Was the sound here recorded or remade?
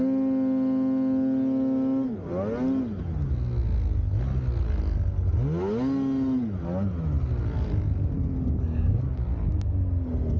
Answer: recorded